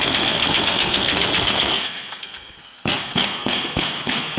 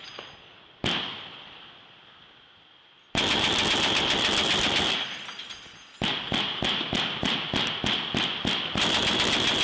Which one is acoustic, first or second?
second